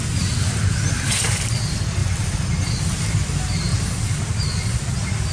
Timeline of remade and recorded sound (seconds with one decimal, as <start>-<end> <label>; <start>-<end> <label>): 0.0-5.3 recorded